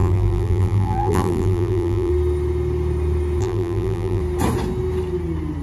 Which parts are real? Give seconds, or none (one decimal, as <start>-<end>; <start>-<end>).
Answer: 2.1-3.4; 4.2-5.6